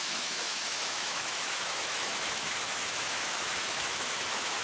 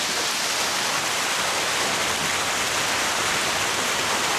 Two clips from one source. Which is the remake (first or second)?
first